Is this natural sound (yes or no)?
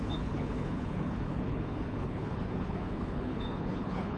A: no